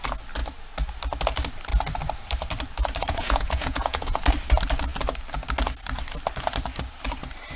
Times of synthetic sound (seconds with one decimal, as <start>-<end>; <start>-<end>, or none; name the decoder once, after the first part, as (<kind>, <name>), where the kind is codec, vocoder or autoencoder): 3.0-4.2 (vocoder, Vocos)